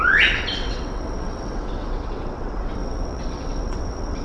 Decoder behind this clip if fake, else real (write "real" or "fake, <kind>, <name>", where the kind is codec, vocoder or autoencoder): fake, vocoder, WaveNeXt